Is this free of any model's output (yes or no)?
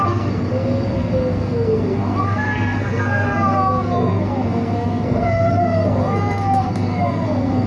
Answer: no